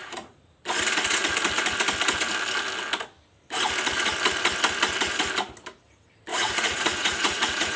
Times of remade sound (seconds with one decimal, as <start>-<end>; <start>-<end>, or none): 0.0-0.6; 6.3-7.8